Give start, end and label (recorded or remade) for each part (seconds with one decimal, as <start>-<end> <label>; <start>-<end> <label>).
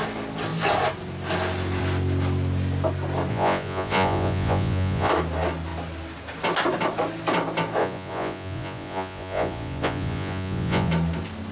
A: 0.0-3.3 recorded; 3.3-5.1 remade; 5.1-7.8 recorded; 7.8-10.9 remade; 10.9-11.5 recorded